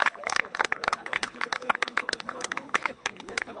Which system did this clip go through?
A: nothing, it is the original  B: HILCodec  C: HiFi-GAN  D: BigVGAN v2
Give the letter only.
B